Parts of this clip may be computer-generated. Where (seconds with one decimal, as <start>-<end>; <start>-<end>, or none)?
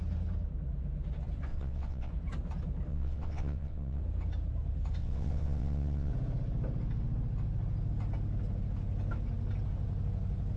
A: 1.5-2.1; 2.9-4.0; 5.0-6.1